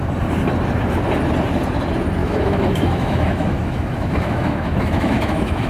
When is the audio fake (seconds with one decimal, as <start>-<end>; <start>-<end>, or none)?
2.2-5.7